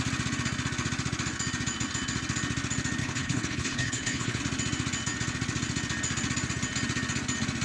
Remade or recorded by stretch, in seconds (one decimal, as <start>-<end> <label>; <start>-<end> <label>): 0.0-3.0 recorded; 3.0-4.4 remade; 4.4-7.6 recorded